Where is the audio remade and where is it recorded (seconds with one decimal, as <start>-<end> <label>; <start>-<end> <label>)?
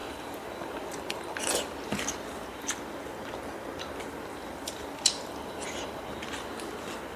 0.0-7.2 recorded